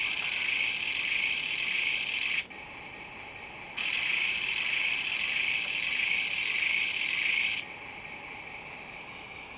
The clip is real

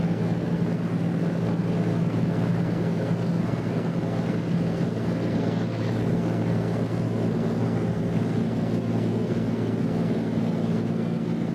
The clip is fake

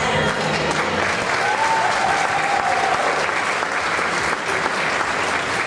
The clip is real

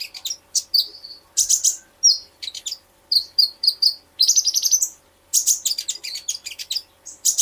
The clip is real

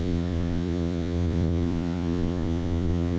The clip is fake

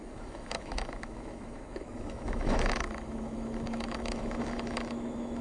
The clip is fake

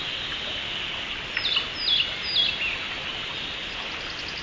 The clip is real